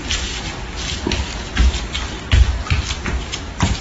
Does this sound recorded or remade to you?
recorded